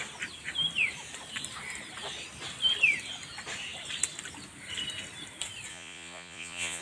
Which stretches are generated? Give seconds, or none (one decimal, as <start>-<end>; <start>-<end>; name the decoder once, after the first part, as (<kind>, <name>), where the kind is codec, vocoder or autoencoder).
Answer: 5.7-6.8 (vocoder, Vocos)